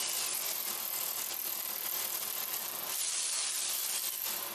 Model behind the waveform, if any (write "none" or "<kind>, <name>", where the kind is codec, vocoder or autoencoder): none